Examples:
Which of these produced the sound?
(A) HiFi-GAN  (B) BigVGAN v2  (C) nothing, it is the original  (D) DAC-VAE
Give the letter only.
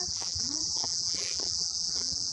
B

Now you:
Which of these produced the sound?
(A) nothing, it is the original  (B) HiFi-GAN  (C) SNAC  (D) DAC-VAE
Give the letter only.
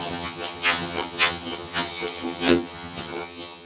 B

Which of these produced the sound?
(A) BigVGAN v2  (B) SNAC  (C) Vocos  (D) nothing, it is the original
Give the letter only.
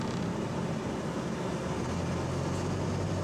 D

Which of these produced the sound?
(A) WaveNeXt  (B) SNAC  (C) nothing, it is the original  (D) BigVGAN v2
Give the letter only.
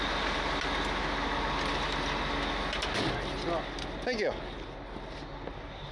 C